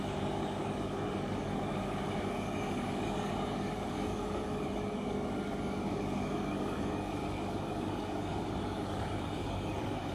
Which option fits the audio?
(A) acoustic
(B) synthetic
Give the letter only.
B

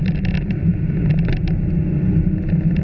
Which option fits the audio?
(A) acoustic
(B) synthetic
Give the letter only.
A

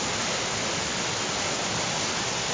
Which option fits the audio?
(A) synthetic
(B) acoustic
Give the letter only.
B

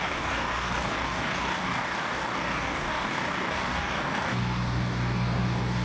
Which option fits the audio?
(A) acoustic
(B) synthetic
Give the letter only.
B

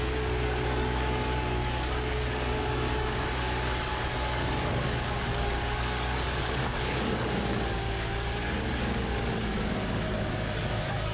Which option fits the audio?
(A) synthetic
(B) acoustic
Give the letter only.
A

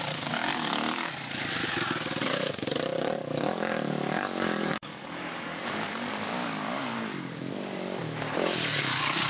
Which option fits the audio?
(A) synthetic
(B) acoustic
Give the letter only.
A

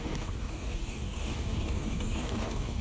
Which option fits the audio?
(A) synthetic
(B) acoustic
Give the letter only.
A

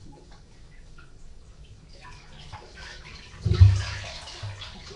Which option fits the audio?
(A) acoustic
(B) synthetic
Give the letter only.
B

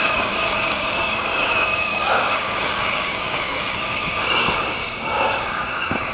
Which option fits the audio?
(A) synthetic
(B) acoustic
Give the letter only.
A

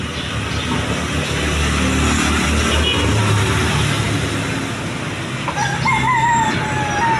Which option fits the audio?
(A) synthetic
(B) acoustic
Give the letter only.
B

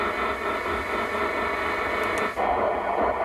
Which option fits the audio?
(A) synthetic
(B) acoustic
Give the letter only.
B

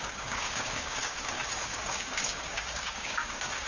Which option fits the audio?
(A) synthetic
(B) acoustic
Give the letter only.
A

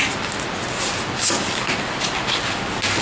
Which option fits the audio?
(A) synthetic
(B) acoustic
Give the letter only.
B